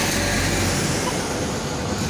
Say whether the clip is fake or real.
real